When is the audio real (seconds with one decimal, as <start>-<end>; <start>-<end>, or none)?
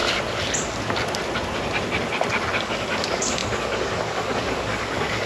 0.0-2.6